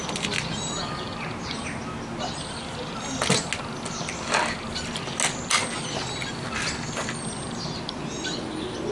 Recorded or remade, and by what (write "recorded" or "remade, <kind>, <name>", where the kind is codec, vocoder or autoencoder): recorded